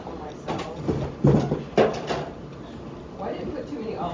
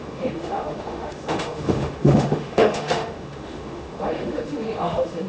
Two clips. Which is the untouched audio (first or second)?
first